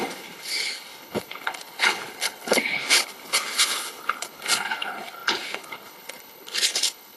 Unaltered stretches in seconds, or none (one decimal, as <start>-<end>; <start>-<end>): none